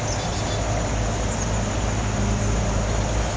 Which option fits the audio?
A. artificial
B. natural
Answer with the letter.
B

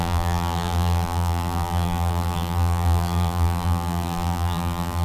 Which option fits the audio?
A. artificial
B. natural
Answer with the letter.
A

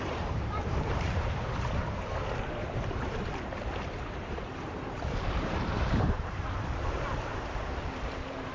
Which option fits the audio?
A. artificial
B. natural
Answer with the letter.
A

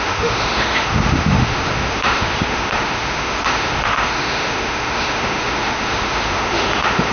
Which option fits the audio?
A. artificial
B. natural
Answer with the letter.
A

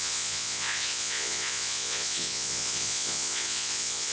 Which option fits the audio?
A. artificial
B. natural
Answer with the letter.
A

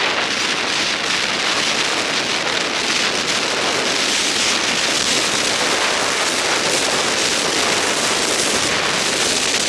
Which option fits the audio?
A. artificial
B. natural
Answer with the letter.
B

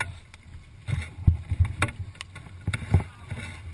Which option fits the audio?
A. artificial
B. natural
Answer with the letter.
B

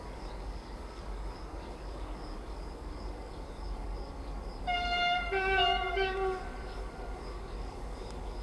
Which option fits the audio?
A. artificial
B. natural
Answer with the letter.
A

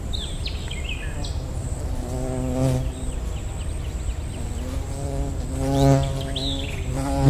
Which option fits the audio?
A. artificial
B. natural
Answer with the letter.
B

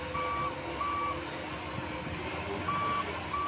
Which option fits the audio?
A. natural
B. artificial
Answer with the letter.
A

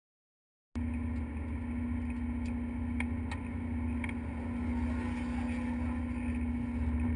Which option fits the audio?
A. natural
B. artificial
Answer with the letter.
A